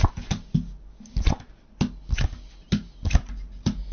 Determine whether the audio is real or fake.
real